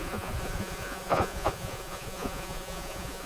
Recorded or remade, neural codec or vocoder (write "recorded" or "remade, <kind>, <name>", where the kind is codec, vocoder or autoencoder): remade, vocoder, Vocos